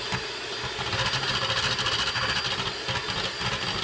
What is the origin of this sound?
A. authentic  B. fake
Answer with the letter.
A